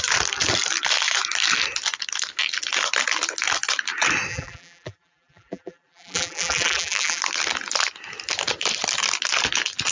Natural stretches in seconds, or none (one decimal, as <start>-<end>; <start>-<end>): 0.0-4.3; 7.2-9.9